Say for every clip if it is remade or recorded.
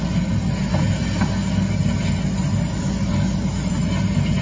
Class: recorded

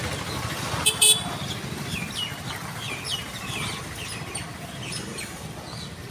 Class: recorded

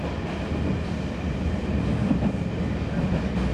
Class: recorded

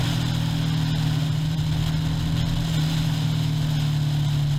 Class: recorded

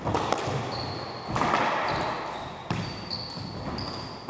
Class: recorded